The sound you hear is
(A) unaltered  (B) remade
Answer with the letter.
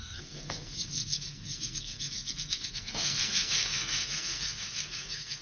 B